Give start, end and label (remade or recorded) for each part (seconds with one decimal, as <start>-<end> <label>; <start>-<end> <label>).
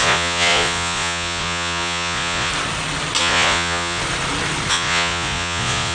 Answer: 0.0-2.5 remade; 2.5-3.2 recorded; 3.2-4.0 remade; 4.0-4.7 recorded; 4.7-5.9 remade